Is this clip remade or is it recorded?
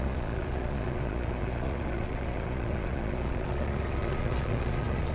remade